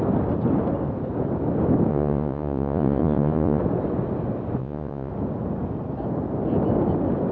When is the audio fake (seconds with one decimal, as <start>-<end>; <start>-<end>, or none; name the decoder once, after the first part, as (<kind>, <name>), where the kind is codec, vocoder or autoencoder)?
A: 1.9-3.6 (vocoder, Vocos); 4.6-5.1